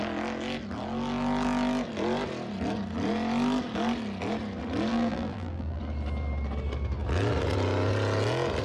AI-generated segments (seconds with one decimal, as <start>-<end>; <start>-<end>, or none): 4.9-5.8

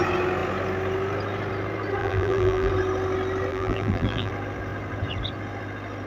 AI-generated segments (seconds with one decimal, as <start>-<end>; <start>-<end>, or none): 2.0-2.7; 3.5-4.3

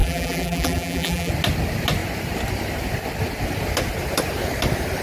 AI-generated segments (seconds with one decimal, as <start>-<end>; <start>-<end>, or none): 0.0-1.3

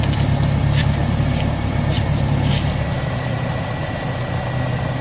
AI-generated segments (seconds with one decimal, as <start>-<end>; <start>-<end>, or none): 0.6-2.5; 3.2-3.7

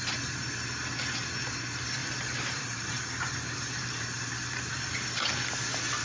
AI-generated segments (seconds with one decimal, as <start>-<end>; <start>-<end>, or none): 2.0-4.7

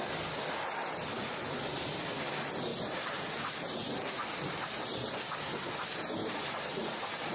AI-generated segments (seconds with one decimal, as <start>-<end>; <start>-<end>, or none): 0.8-2.3; 2.7-5.7; 6.2-7.3

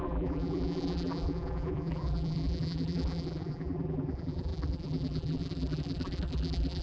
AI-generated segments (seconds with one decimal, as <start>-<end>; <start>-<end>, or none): 0.0-6.8